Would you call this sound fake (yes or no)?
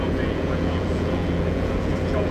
yes